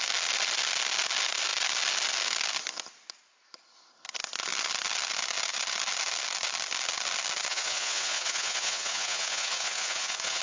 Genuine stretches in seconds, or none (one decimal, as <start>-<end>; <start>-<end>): 0.0-7.5